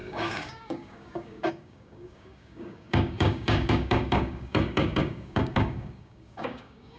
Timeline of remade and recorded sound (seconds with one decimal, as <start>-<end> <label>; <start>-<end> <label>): 0.0-7.0 remade